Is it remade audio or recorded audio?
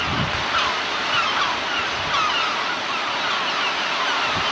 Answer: recorded